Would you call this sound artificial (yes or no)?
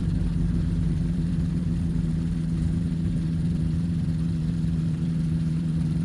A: yes